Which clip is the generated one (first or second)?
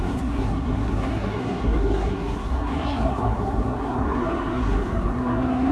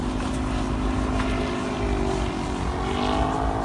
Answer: first